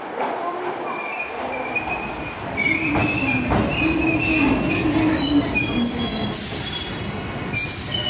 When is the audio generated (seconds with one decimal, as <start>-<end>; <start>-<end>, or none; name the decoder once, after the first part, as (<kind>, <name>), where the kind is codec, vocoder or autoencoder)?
none